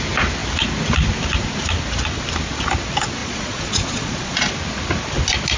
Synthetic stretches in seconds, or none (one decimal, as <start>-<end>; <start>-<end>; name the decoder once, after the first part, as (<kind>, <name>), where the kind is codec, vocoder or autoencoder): 3.2-4.5 (vocoder, Vocos)